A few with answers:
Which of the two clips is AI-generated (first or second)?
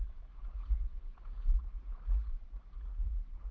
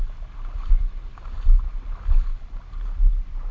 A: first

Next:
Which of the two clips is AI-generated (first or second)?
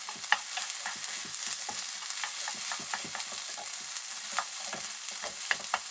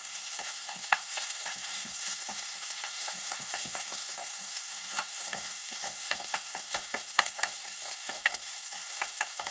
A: second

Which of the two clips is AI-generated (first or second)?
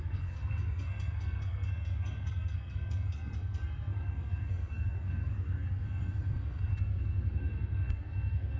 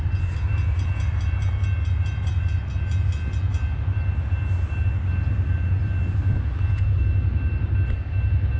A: first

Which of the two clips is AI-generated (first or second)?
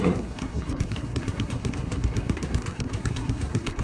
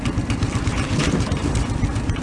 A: first